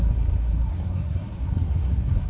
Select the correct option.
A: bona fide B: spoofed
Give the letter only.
B